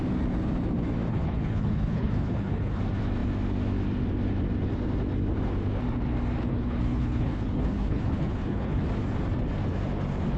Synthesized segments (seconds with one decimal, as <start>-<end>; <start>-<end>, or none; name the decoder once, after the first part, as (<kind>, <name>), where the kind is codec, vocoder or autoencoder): 1.1-2.8 (codec, HILCodec); 6.5-8.8